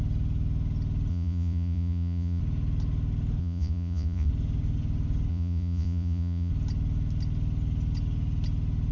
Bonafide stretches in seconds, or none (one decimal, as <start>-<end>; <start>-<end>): 0.0-1.1; 2.4-3.4; 4.3-5.3; 6.5-8.9

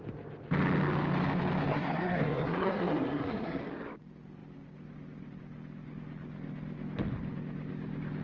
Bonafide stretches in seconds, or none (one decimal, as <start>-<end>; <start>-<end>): 0.0-1.7; 3.6-8.2

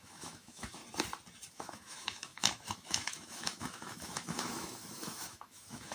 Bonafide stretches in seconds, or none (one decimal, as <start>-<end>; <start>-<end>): 0.8-1.5

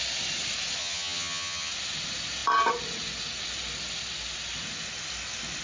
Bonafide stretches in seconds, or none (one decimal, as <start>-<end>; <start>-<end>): 0.0-0.8; 1.7-5.6

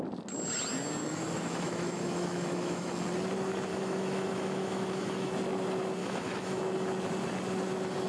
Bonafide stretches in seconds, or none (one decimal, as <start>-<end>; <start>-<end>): 0.0-1.0; 2.9-3.7; 5.3-6.0; 6.6-8.1

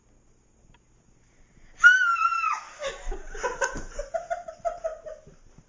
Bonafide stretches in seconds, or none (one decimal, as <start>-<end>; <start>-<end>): 0.0-2.1; 4.0-5.7

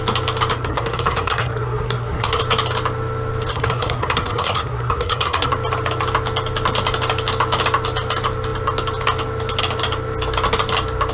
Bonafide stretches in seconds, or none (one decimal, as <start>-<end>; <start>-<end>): 0.0-0.5; 2.4-3.5; 5.5-11.1